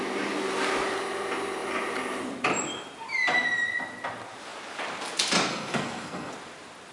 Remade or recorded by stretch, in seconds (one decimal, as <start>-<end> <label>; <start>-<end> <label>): 0.0-5.5 recorded; 5.5-6.3 remade; 6.3-6.9 recorded